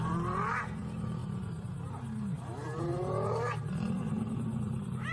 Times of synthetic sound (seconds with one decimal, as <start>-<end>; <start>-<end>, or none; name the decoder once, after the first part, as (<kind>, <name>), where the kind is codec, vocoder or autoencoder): 1.2-1.9 (vocoder, BigVGAN v2)